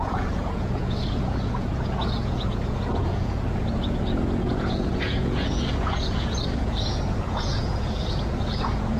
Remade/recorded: remade